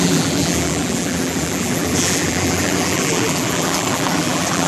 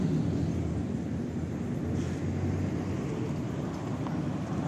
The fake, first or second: first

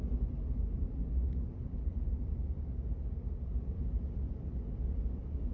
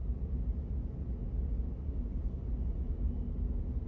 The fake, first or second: first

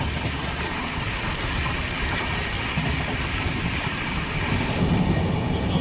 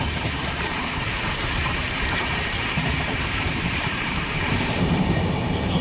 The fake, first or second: second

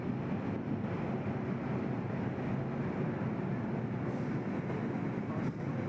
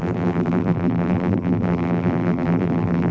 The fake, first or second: second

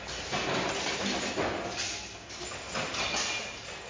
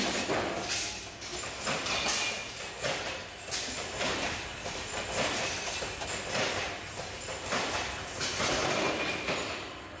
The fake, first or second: second